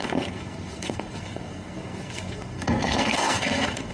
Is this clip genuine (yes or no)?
no